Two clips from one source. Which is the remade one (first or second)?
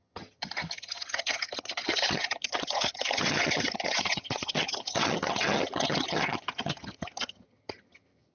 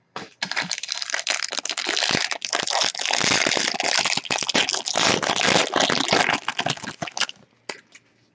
first